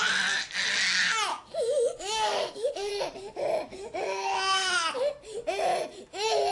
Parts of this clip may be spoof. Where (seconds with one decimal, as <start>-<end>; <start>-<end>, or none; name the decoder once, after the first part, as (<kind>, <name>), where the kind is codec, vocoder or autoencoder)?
1.3-2.9 (codec, DAC); 3.7-5.0